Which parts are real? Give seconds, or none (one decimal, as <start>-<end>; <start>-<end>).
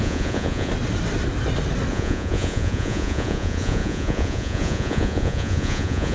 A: 0.7-1.9